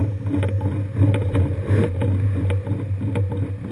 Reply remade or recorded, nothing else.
recorded